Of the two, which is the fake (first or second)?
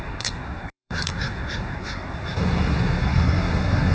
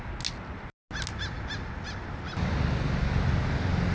first